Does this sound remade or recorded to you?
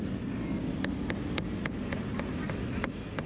recorded